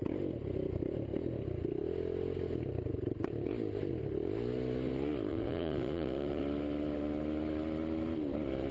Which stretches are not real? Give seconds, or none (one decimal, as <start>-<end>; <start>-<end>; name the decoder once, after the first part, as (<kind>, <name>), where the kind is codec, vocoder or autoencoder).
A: 5.3-6.4 (vocoder, Vocos)